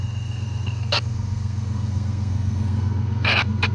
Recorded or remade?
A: remade